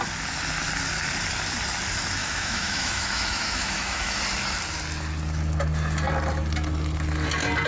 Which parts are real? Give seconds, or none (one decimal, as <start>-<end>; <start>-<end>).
0.0-2.2; 4.2-7.7